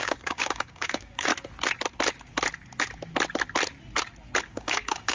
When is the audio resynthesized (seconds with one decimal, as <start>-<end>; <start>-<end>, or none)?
0.0-1.3; 4.4-5.1